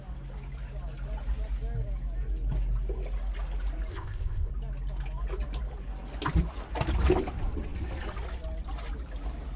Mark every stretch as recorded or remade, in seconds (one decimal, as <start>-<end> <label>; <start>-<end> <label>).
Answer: 0.0-3.9 recorded; 3.9-4.5 remade; 4.5-9.6 recorded